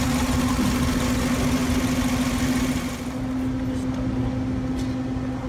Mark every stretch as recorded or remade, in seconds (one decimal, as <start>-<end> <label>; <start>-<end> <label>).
0.0-5.5 recorded

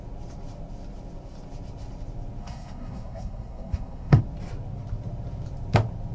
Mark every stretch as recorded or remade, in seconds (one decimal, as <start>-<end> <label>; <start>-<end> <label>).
0.0-2.4 recorded; 2.4-4.2 remade; 4.2-6.1 recorded

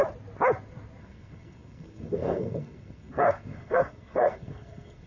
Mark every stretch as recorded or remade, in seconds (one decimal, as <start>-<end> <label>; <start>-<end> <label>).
0.0-1.0 recorded; 1.0-5.1 remade

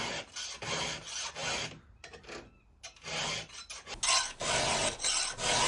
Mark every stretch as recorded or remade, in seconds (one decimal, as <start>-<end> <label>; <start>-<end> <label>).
0.0-5.7 recorded

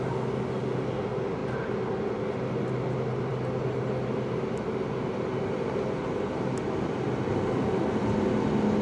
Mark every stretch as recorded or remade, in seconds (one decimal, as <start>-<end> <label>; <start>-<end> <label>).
0.0-8.8 recorded

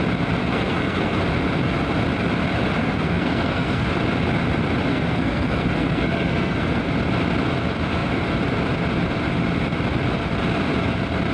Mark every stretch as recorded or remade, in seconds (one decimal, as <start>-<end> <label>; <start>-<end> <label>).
0.0-0.4 recorded; 0.4-1.2 remade; 1.2-2.8 recorded; 2.8-3.8 remade; 3.8-4.9 recorded; 4.9-6.8 remade; 6.8-11.3 recorded